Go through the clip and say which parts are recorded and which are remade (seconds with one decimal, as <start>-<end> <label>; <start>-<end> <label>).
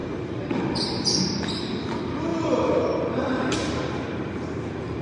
0.0-2.3 recorded; 2.3-4.3 remade; 4.3-5.0 recorded